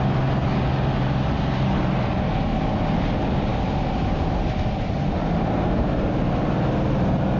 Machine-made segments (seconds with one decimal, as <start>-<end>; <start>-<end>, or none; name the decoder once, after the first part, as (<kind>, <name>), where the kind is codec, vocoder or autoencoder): none